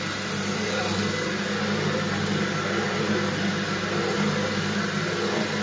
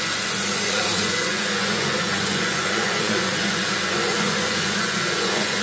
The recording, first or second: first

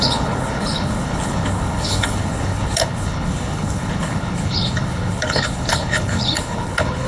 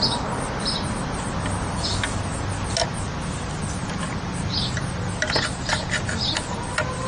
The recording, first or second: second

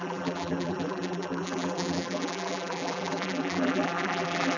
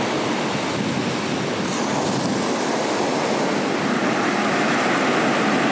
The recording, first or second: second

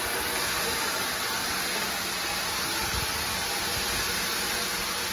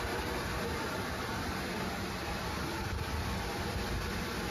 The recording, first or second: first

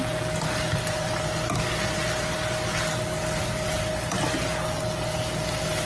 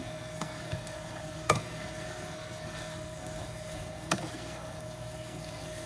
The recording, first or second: first